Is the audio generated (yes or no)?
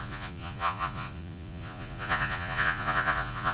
yes